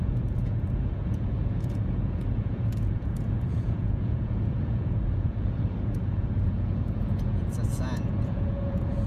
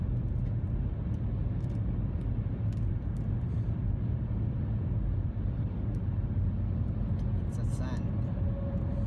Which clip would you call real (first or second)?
second